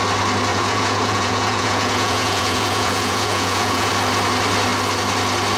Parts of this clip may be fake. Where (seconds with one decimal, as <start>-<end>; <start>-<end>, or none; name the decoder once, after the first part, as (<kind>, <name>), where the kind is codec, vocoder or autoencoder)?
0.5-3.9 (vocoder, Vocos)